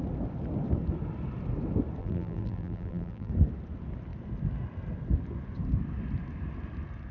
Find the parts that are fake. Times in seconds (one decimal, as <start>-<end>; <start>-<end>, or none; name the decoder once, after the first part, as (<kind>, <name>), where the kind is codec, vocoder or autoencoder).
2.0-3.3 (vocoder, BigVGAN v2)